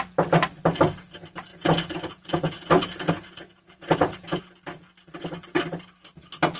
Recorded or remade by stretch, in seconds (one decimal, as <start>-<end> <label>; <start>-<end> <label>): 0.0-1.5 recorded; 1.5-4.4 remade; 4.4-6.6 recorded